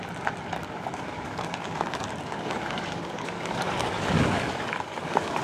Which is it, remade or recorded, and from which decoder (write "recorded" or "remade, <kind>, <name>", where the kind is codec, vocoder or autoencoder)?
remade, codec, DAC